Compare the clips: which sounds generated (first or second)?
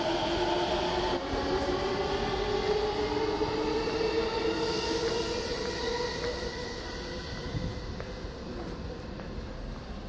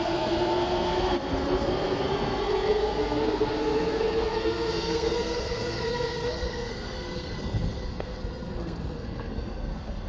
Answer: second